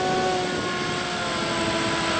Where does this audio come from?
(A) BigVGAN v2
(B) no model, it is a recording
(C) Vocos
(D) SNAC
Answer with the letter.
B